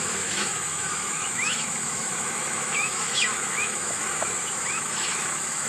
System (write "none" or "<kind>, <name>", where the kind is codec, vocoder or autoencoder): autoencoder, DAC-VAE